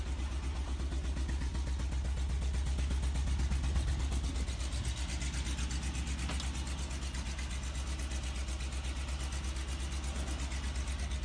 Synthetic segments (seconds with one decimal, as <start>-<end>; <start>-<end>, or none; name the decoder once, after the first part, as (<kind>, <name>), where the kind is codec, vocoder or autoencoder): none